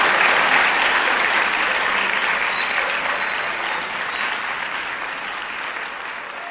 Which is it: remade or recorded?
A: recorded